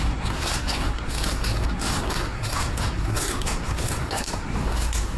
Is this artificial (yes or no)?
yes